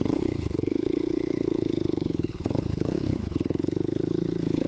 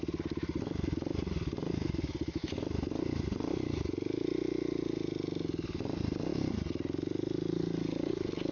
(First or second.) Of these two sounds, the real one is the second